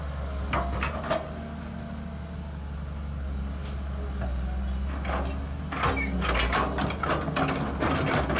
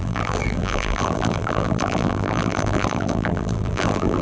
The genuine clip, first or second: first